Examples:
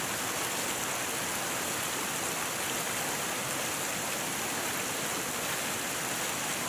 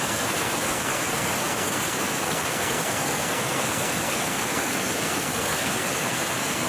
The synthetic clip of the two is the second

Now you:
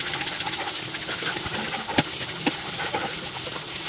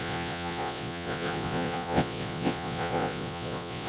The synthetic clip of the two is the second